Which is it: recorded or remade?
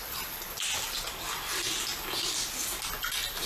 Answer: recorded